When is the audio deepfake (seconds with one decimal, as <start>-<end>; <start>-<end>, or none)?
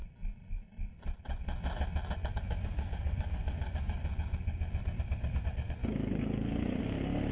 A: 2.3-4.0; 5.0-7.3